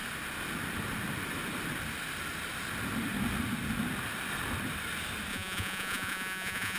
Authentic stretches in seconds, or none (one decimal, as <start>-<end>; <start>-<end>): 0.0-5.3